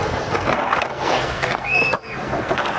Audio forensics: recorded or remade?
remade